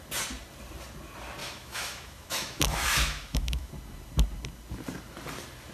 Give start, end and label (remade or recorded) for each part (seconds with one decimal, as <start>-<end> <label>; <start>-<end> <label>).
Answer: 0.0-1.4 recorded; 1.4-3.7 remade; 3.7-5.7 recorded